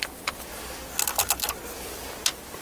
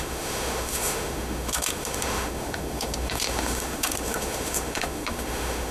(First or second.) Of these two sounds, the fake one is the second